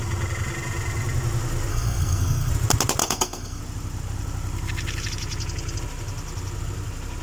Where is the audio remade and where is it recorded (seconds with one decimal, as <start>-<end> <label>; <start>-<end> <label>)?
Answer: 0.0-1.7 recorded; 1.7-2.5 remade; 2.5-3.0 recorded; 3.0-3.6 remade; 3.6-7.2 recorded

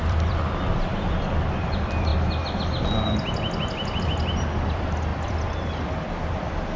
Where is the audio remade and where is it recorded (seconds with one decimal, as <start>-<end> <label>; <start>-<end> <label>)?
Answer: 0.0-2.1 remade; 2.1-4.0 recorded; 4.0-6.8 remade

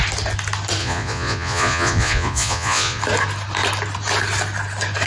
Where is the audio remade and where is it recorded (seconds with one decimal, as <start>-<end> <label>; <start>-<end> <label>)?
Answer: 0.0-0.8 recorded; 0.8-3.0 remade; 3.0-5.1 recorded

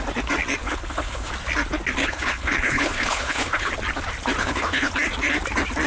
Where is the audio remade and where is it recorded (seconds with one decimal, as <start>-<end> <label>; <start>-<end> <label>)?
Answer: 0.0-0.6 recorded; 0.6-1.3 remade; 1.3-2.0 recorded; 2.0-3.7 remade; 3.7-4.4 recorded; 4.4-4.9 remade; 4.9-5.9 recorded

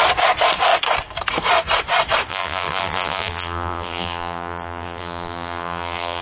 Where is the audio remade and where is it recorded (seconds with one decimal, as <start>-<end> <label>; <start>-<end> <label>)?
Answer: 0.0-2.3 recorded; 2.3-6.2 remade

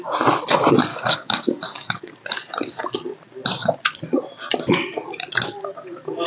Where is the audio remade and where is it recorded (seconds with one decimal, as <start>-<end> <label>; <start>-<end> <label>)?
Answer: 0.0-0.9 recorded; 0.9-2.1 remade; 2.1-6.3 recorded

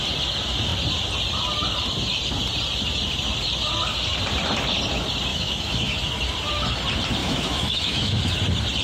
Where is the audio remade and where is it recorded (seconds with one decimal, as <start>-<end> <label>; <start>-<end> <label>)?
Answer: 0.0-5.3 recorded; 5.3-6.0 remade; 6.0-7.2 recorded; 7.2-8.2 remade; 8.2-8.8 recorded

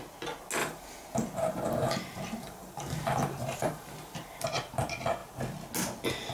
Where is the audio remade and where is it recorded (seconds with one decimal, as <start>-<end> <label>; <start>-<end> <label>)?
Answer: 0.0-0.6 recorded; 0.6-4.4 remade; 4.4-6.3 recorded